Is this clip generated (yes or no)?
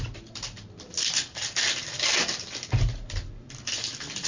yes